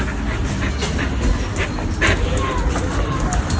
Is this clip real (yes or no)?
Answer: yes